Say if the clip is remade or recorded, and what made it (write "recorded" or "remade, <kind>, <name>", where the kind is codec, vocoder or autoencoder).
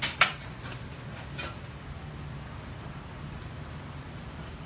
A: recorded